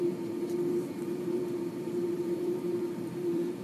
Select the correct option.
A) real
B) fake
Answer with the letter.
B